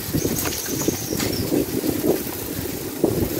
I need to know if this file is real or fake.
real